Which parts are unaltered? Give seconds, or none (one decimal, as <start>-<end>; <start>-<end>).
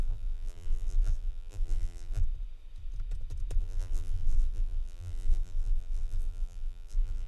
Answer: 2.2-3.6